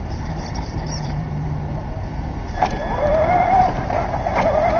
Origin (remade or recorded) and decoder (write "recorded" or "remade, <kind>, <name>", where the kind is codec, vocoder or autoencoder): remade, vocoder, BigVGAN v2